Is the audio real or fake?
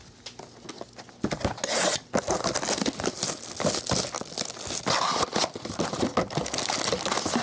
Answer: real